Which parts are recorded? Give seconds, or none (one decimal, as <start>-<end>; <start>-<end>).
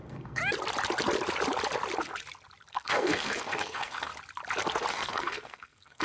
0.4-2.7; 4.1-4.9